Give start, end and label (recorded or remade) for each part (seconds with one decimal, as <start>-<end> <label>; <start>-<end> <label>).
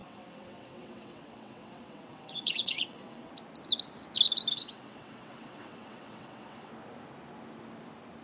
0.0-3.3 remade; 3.3-4.5 recorded; 4.5-6.7 remade; 6.7-8.2 recorded